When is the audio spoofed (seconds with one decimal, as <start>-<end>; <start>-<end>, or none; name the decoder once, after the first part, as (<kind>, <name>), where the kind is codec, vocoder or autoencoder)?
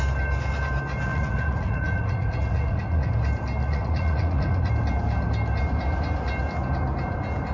1.1-3.1 (vocoder, Vocos); 3.6-4.7